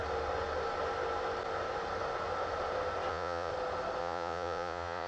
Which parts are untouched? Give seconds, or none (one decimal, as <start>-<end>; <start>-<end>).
0.0-3.1; 3.5-4.0